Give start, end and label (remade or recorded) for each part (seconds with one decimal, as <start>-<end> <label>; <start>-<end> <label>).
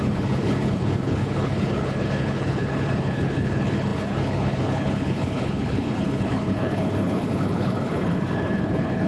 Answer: 0.0-9.1 remade